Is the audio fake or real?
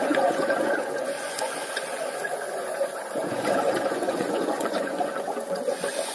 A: fake